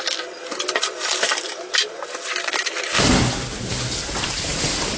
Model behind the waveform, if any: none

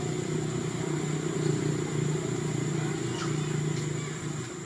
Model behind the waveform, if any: none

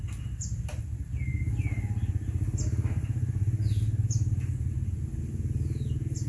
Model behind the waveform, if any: none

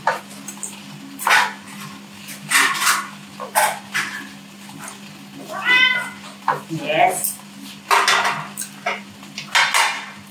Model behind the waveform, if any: none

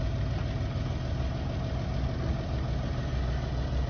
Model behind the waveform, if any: none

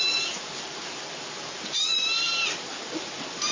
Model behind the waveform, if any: none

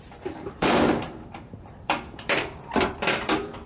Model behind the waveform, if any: vocoder, BigVGAN v2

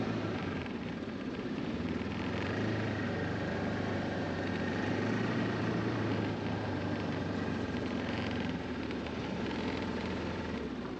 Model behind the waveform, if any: vocoder, BigVGAN v2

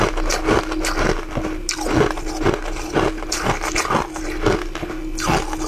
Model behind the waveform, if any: none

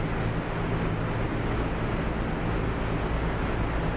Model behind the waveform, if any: none